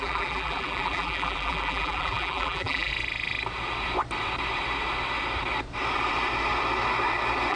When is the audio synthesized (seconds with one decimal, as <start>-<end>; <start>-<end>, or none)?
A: 0.0-2.9

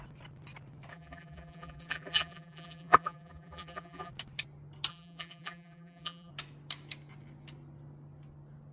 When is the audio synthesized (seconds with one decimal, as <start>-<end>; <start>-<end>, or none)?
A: 0.9-4.1; 4.9-6.3

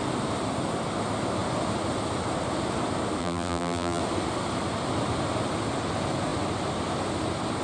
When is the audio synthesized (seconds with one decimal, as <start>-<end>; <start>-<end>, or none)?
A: 3.2-4.0

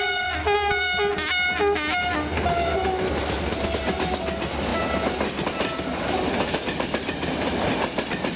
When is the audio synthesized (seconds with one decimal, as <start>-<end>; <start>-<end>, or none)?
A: none

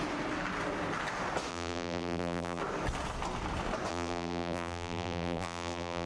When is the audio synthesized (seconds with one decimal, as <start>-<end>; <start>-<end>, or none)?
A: 1.5-2.6; 3.9-6.1

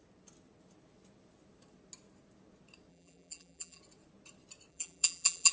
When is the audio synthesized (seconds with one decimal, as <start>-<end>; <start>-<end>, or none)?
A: 2.9-3.8; 4.7-5.5